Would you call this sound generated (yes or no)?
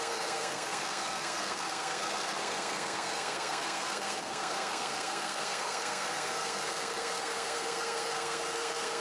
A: yes